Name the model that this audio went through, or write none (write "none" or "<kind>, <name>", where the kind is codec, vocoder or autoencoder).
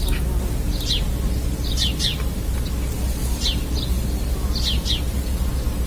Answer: none